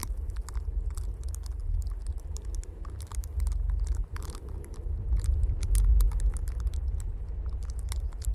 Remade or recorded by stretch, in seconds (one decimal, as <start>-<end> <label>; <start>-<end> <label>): 0.0-8.3 recorded